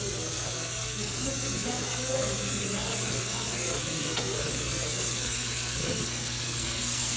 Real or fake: fake